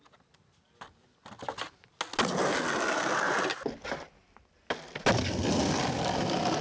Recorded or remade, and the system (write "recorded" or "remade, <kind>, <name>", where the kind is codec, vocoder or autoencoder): recorded